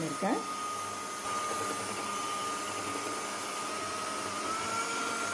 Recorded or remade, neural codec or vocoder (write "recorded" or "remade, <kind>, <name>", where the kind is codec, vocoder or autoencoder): recorded